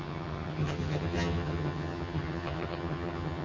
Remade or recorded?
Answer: remade